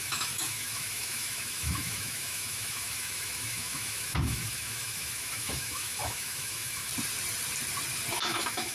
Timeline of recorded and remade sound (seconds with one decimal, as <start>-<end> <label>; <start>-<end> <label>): 0.0-6.9 remade; 6.9-8.2 recorded; 8.2-8.7 remade